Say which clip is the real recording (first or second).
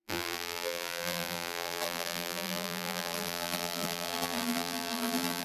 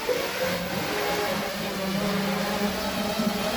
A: second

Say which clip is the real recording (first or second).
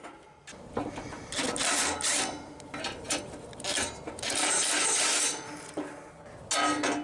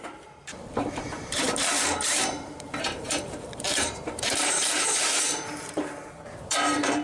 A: first